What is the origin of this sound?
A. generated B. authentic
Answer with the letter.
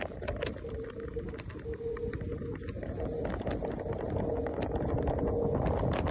B